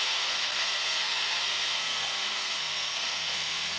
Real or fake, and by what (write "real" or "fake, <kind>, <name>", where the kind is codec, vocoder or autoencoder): fake, codec, SNAC